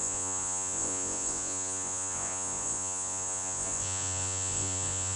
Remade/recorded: remade